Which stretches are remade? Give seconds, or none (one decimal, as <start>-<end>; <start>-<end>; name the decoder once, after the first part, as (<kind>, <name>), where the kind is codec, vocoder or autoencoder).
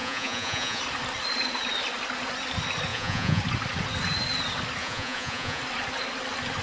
0.0-0.8 (vocoder, Vocos); 2.9-3.4; 4.8-5.6